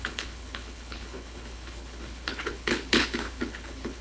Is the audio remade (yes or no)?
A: yes